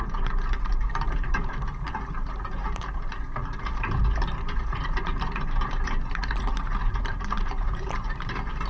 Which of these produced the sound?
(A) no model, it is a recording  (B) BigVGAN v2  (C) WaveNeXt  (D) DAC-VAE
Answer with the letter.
B